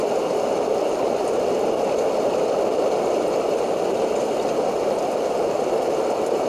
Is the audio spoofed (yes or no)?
no